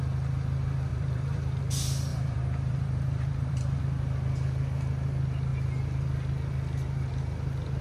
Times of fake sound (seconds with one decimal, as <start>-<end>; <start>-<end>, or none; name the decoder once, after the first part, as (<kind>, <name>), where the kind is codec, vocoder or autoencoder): 0.9-1.6 (vocoder, BigVGAN v2); 2.1-3.8